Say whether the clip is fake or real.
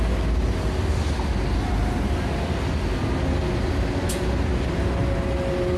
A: real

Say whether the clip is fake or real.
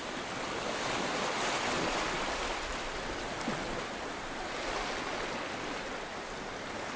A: real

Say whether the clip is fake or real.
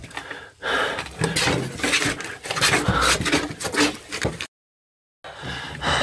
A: real